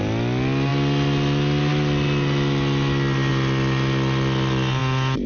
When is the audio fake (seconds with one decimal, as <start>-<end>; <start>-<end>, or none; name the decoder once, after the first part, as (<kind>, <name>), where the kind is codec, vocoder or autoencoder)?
none